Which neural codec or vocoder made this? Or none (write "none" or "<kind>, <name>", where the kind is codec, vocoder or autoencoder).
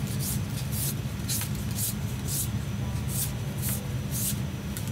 none